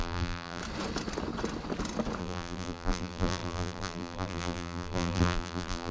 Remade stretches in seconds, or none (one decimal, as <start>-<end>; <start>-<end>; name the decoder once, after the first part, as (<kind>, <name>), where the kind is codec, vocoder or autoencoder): 0.0-0.6 (vocoder, BigVGAN v2); 2.2-5.9